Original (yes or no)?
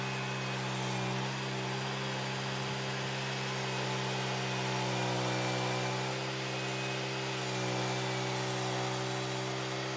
yes